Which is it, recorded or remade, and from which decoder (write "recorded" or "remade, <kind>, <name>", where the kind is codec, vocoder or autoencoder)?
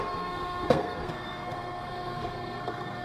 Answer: remade, codec, SNAC